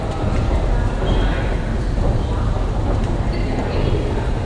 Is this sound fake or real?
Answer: real